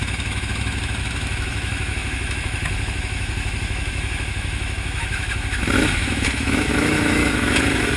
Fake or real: fake